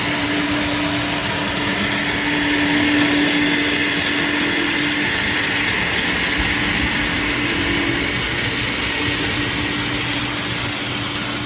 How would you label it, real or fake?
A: real